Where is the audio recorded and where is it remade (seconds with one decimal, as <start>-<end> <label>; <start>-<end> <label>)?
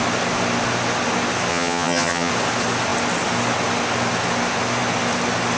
0.0-1.5 recorded; 1.5-2.3 remade; 2.3-5.6 recorded